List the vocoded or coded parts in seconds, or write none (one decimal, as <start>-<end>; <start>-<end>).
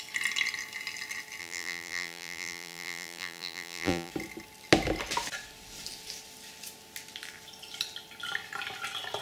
1.4-4.1